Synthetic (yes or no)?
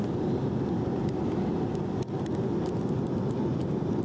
no